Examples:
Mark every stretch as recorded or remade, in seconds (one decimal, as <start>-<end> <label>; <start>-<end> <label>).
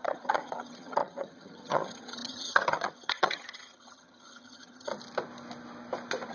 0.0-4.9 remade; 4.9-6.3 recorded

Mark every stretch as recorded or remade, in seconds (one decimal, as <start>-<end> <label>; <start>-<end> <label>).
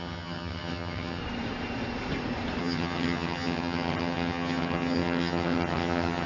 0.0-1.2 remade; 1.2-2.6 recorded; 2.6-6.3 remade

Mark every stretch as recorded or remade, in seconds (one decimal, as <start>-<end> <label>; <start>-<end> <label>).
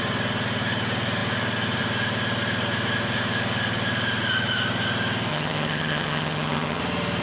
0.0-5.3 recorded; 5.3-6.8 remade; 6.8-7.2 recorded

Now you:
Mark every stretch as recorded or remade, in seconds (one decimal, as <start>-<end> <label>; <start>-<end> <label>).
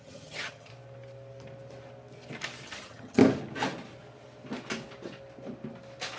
0.0-0.7 remade; 0.7-2.7 recorded; 2.7-3.2 remade; 3.2-6.2 recorded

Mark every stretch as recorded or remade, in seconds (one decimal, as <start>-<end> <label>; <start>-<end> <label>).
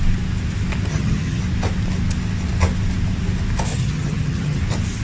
0.0-0.9 recorded; 0.9-1.4 remade; 1.4-3.7 recorded; 3.7-4.6 remade; 4.6-5.0 recorded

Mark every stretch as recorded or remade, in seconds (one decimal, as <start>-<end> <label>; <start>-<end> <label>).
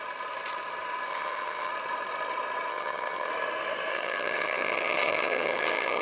0.0-1.1 recorded; 1.1-1.7 remade; 1.7-2.7 recorded; 2.7-3.3 remade; 3.3-3.9 recorded; 3.9-6.0 remade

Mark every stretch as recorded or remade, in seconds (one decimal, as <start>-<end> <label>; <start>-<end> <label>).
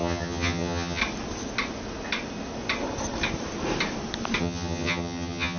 0.0-1.0 remade; 1.0-4.4 recorded; 4.4-5.6 remade